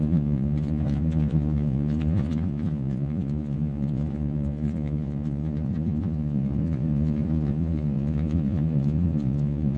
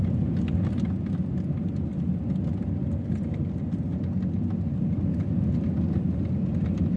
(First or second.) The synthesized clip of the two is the first